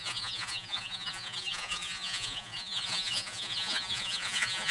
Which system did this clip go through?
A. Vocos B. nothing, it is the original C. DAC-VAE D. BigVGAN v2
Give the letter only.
A